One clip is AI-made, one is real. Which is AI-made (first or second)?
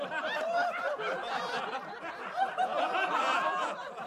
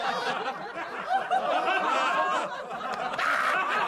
first